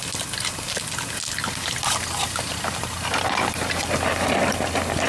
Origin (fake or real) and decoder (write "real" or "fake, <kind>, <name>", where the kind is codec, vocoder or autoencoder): real